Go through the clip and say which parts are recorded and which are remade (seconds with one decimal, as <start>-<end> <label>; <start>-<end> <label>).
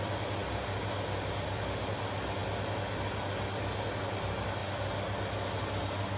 0.0-6.2 recorded